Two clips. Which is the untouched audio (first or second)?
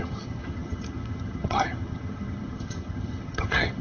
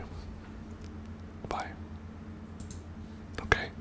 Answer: second